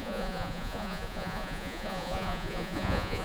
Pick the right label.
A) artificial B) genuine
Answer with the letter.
A